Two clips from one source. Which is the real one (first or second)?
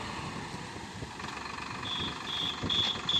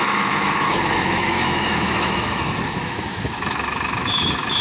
first